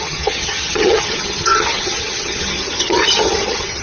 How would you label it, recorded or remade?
remade